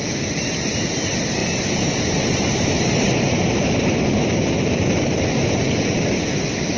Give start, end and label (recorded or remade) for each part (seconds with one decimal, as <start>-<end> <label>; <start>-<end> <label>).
0.0-1.4 recorded; 1.4-5.5 remade; 5.5-6.8 recorded